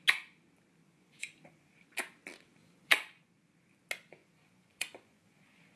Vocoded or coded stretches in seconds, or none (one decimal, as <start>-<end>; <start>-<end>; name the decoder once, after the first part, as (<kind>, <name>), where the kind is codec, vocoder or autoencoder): 0.8-1.7 (vocoder, Vocos); 2.6-3.3; 4.2-5.8